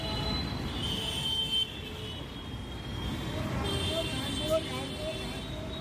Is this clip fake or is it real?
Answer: real